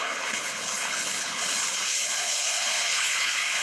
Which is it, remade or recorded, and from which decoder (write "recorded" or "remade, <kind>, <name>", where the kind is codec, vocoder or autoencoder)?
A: remade, codec, HILCodec